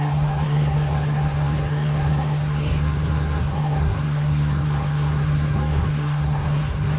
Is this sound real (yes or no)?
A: no